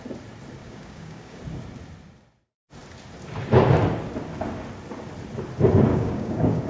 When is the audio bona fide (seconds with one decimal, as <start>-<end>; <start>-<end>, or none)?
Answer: 0.0-0.6; 1.4-5.9